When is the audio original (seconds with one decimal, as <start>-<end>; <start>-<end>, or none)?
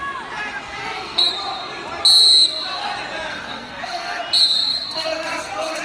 0.0-0.8; 1.3-3.3; 4.2-4.7